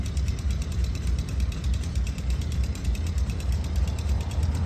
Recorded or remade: remade